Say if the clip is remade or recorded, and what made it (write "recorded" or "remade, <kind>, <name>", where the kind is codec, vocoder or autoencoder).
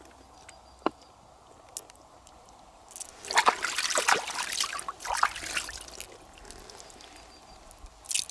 recorded